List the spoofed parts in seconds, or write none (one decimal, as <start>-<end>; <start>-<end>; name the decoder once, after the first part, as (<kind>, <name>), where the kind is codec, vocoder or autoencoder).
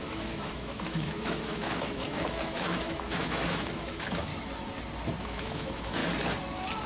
0.0-4.3 (autoencoder, DAC-VAE); 5.2-6.0